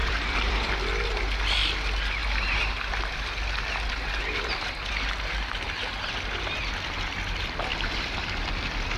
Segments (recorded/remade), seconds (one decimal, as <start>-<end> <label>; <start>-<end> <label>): 0.0-0.7 remade; 0.7-7.7 recorded; 7.7-8.5 remade; 8.5-9.0 recorded